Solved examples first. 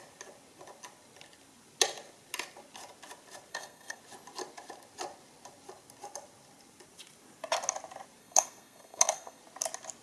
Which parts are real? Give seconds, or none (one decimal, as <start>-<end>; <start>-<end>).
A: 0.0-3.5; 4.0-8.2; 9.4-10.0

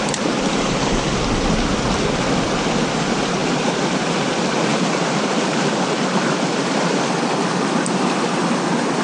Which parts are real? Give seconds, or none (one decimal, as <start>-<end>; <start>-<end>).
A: 0.0-9.0

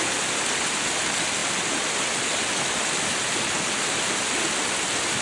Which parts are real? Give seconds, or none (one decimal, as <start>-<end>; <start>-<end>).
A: 0.0-5.2

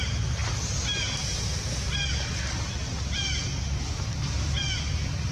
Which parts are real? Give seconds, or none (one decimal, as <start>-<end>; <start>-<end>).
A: 0.0-5.3

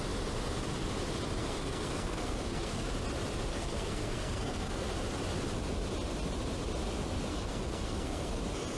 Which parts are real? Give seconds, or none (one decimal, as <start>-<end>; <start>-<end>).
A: 0.0-1.4; 2.9-3.5; 4.9-7.3; 8.4-8.8

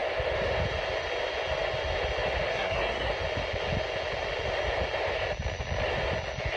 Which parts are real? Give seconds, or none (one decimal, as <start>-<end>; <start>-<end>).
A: 0.0-2.5; 3.1-6.6

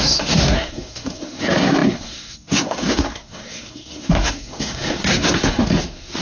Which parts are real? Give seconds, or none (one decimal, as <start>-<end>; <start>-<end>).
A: none